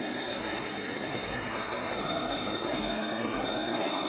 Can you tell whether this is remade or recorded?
remade